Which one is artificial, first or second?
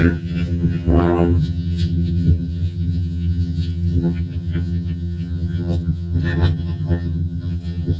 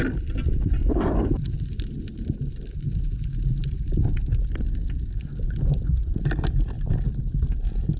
first